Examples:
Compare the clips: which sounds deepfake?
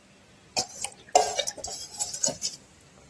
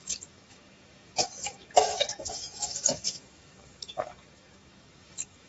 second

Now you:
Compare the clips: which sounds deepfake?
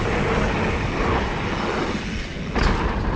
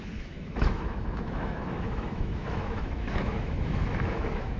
second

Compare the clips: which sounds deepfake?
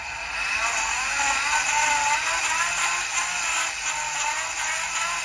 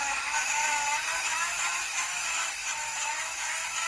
second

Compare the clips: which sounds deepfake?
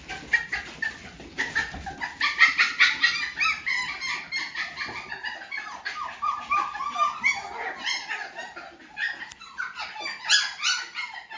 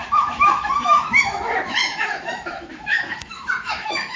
second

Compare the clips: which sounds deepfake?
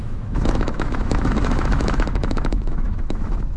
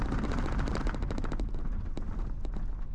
first